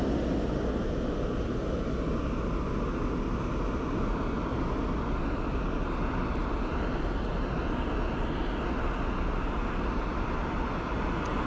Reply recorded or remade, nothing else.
recorded